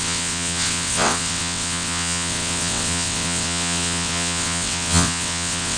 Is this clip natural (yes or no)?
no